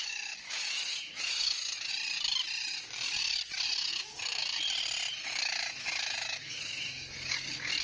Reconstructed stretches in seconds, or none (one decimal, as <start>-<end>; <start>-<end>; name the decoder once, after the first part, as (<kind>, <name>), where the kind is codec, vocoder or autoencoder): 0.0-1.9 (autoencoder, DAC-VAE); 3.9-4.4; 5.2-7.8

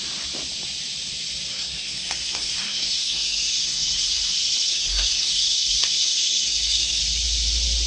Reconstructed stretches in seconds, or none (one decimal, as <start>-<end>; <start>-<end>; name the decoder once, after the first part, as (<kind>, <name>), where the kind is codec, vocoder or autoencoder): 1.5-4.2 (codec, SNAC); 4.7-7.0

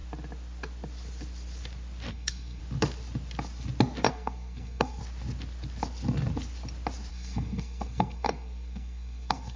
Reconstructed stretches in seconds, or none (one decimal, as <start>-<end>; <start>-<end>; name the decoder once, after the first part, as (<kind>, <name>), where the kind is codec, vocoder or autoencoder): 2.1-2.6 (codec, SNAC); 4.1-5.0; 7.1-9.6

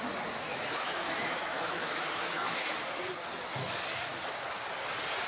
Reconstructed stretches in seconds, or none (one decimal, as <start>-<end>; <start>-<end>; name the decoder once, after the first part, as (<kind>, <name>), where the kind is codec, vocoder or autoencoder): 0.5-2.7 (autoencoder, DAC-VAE)